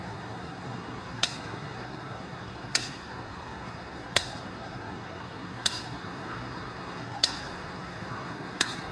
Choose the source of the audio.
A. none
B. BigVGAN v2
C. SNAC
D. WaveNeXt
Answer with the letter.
C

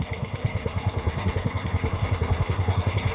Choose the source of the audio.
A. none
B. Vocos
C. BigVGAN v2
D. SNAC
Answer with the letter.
D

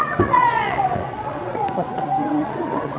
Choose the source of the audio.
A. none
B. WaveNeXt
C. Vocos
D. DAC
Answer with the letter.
B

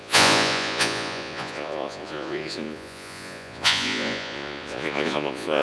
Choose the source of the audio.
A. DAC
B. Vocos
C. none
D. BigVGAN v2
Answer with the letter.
B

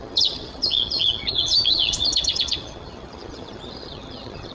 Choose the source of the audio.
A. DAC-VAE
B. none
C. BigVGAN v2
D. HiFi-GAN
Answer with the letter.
D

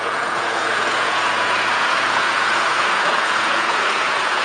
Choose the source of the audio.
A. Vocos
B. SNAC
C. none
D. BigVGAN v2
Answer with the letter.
A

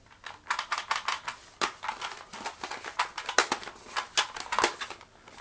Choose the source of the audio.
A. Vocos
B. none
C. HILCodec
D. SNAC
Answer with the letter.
B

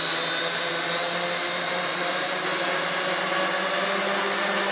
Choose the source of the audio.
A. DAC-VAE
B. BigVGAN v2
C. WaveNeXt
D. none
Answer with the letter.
D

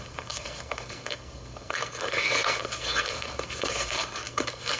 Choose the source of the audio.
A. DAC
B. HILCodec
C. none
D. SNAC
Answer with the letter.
D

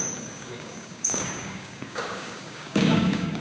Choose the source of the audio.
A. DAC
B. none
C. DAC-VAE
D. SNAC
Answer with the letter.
A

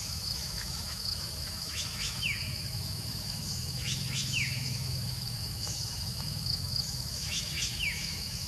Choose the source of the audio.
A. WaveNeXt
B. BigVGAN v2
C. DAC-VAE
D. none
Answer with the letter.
C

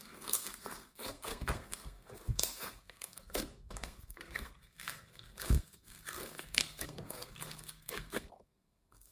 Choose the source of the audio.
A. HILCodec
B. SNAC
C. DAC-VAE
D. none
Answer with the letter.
B